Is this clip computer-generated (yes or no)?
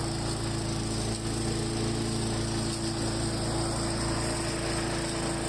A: no